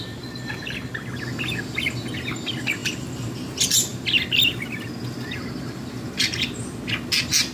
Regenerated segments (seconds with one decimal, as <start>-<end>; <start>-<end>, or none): none